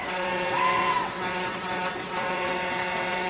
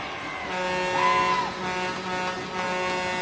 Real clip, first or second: second